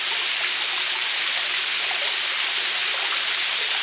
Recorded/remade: recorded